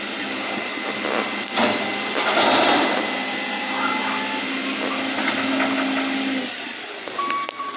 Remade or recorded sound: recorded